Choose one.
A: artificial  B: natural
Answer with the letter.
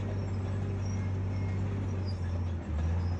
B